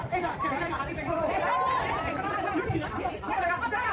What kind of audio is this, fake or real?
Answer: real